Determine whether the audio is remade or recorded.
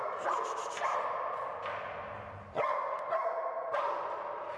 recorded